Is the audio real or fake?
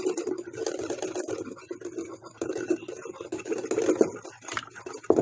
real